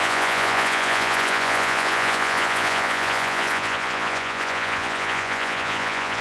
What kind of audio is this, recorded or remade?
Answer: remade